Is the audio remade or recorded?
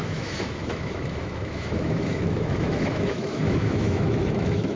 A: remade